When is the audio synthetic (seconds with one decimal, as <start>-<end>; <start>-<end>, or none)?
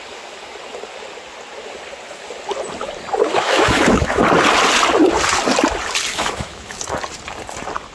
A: 3.3-4.2; 6.1-6.8